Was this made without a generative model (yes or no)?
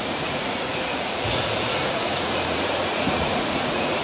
no